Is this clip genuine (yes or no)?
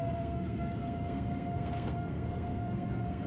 no